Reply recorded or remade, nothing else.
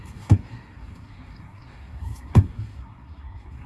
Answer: remade